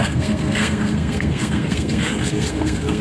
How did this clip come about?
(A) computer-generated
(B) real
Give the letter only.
A